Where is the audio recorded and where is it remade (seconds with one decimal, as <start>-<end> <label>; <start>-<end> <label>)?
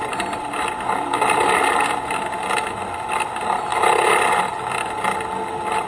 0.0-5.9 recorded